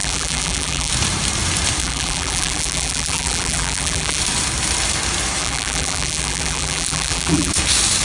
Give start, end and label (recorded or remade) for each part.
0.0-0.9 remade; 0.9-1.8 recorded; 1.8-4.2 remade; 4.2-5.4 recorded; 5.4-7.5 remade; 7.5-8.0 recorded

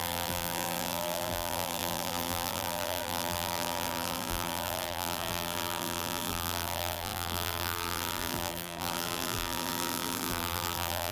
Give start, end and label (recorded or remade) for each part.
0.0-11.1 remade

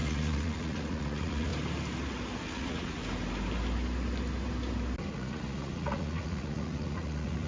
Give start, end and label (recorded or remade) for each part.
0.0-1.5 remade; 1.5-2.5 recorded; 2.5-3.0 remade; 3.0-5.1 recorded; 5.1-7.5 remade

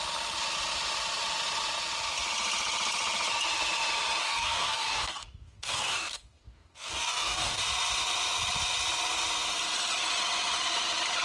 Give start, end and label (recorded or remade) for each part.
0.0-4.2 recorded; 4.2-7.6 remade; 7.6-11.2 recorded

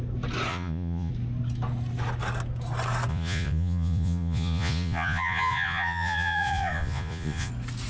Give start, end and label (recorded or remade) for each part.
0.0-0.5 recorded; 0.5-1.1 remade; 1.1-3.1 recorded; 3.1-7.5 remade; 7.5-7.9 recorded

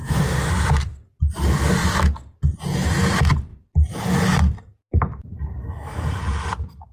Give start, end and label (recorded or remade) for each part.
0.0-0.5 remade; 0.5-6.9 recorded

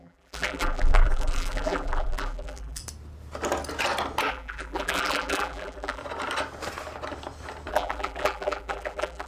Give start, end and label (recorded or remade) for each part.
0.0-2.8 remade; 2.8-4.3 recorded; 4.3-6.0 remade; 6.0-7.7 recorded; 7.7-9.3 remade